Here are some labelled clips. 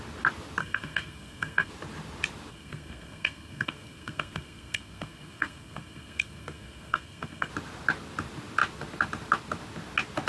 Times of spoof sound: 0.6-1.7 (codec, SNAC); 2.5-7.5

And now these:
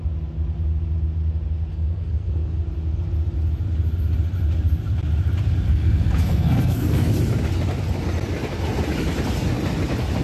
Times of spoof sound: 1.7-2.5 (codec, SNAC); 5.7-7.1

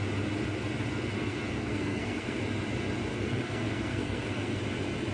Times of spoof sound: 1.1-2.4 (codec, SNAC); 3.1-4.6

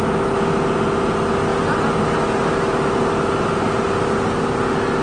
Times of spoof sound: none

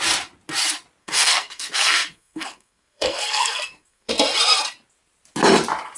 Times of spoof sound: 1.0-4.1 (codec, SNAC)

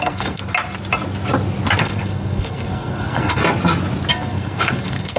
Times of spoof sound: 0.0-0.4 (codec, SNAC); 1.8-3.4; 4.1-5.2

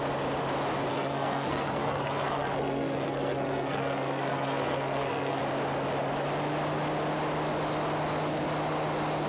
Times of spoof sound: 0.9-5.4 (codec, SNAC)